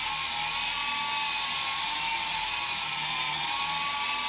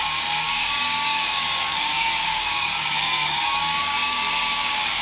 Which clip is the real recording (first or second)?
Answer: first